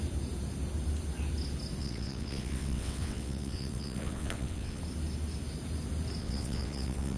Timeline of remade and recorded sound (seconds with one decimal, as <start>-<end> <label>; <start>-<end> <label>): 0.0-1.8 recorded; 1.8-4.8 remade; 4.8-6.2 recorded; 6.2-7.2 remade